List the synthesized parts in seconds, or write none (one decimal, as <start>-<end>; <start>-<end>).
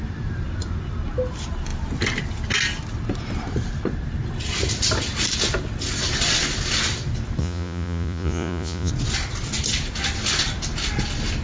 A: 7.4-8.9